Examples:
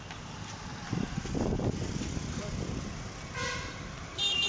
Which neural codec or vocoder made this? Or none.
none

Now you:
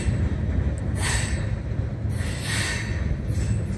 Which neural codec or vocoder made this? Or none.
none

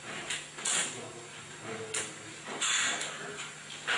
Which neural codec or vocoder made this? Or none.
none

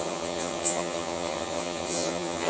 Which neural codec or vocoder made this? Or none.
vocoder, HiFi-GAN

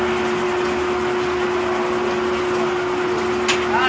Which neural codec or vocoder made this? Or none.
none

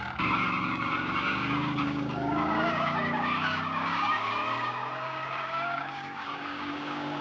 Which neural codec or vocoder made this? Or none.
codec, DAC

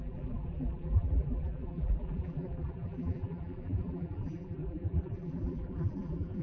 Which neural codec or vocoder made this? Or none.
vocoder, BigVGAN v2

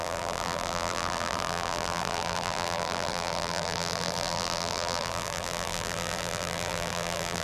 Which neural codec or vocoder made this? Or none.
vocoder, BigVGAN v2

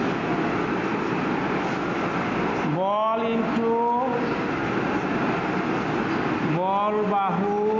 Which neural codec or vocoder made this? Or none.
none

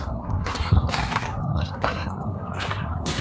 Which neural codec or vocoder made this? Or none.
codec, SNAC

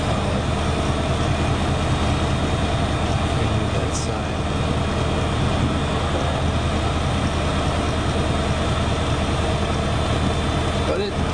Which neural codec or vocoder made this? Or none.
none